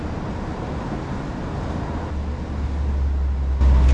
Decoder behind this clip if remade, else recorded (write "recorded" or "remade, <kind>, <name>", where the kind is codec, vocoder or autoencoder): recorded